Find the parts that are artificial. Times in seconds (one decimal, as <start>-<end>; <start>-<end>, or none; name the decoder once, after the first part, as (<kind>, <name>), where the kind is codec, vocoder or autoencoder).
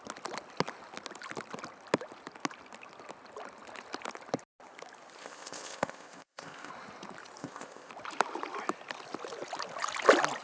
5.2-6.7 (codec, ZipCodec); 7.4-7.9